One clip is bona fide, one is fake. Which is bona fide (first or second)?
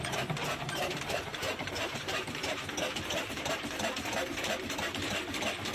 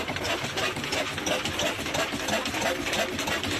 second